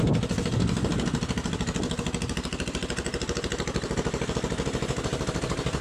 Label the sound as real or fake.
real